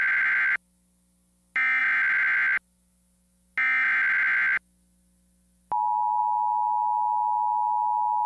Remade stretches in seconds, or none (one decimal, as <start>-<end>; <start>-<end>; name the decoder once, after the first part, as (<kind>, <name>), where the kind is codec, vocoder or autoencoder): none